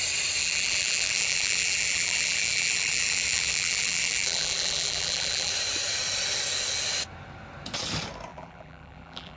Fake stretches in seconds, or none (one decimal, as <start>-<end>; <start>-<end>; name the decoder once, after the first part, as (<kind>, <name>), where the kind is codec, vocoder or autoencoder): 0.4-5.5 (vocoder, BigVGAN v2); 8.3-9.4